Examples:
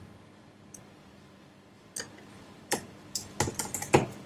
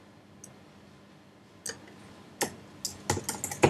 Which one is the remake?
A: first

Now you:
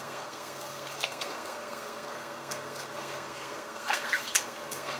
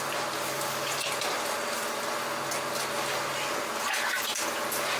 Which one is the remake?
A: first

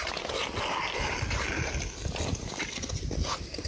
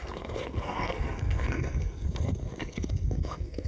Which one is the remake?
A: second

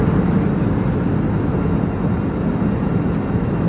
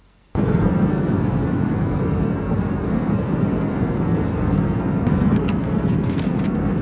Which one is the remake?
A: second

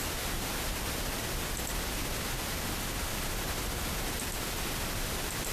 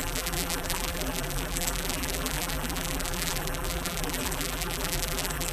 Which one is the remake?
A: second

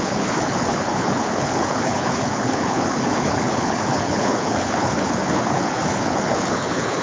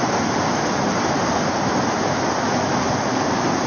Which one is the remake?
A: first